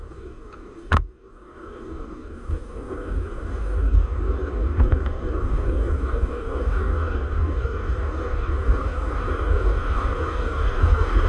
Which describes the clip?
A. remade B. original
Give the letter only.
A